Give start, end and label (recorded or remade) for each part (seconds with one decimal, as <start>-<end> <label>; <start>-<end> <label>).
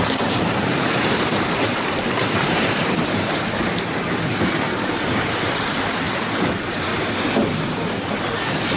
0.0-6.9 remade; 6.9-8.8 recorded